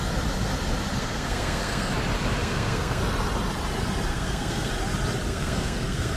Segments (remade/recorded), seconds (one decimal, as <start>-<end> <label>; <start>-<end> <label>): 0.0-1.0 recorded; 1.0-1.9 remade; 1.9-2.4 recorded; 2.4-3.0 remade; 3.0-4.1 recorded; 4.1-4.7 remade; 4.7-5.3 recorded; 5.3-6.2 remade